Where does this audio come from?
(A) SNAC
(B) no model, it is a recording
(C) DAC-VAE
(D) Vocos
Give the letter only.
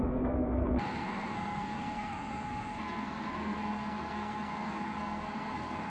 A